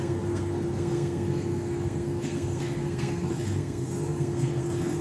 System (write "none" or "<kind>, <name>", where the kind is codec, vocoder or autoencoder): codec, SNAC